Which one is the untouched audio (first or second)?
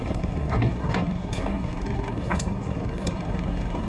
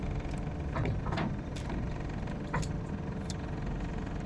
second